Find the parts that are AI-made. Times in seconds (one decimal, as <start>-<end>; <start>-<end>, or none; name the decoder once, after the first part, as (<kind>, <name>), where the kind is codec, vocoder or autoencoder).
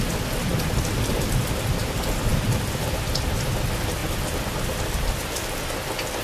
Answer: 0.5-1.8 (vocoder, BigVGAN v2); 2.3-3.3; 4.0-5.0